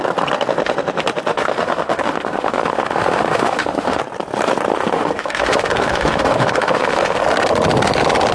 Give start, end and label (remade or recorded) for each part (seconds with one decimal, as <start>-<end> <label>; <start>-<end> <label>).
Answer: 0.0-1.3 recorded; 1.3-4.0 remade; 4.0-4.7 recorded; 4.7-7.2 remade; 7.2-8.3 recorded